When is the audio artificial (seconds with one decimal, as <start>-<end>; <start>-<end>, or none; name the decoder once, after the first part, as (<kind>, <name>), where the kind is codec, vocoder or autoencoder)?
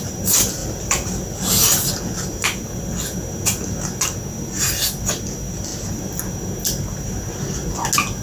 0.6-1.5 (vocoder, BigVGAN v2)